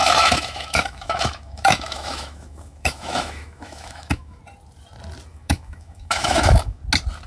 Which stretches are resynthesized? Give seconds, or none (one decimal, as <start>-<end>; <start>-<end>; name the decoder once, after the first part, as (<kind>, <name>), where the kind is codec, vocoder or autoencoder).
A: 0.0-4.4 (autoencoder, DAC-VAE); 5.3-6.8

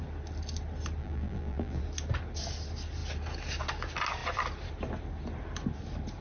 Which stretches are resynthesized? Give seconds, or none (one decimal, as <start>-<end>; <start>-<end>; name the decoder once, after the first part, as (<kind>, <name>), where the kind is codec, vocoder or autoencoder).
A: 1.0-1.8 (vocoder, BigVGAN v2)

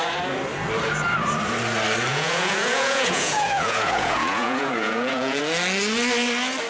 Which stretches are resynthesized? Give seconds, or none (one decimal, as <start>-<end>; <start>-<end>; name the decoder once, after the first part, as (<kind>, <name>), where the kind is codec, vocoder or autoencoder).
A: 2.1-5.4 (vocoder, Vocos)